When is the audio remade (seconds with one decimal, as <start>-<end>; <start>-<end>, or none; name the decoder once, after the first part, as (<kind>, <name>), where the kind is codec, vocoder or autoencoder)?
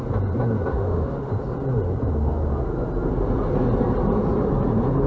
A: 0.7-1.3 (autoencoder, DAC-VAE)